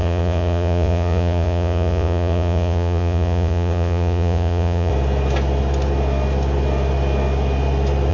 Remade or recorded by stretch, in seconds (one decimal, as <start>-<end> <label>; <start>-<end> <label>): 0.0-4.9 remade; 4.9-8.1 recorded